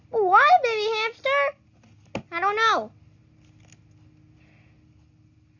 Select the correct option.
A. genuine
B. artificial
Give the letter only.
A